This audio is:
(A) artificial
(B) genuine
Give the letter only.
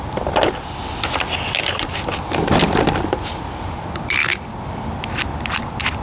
B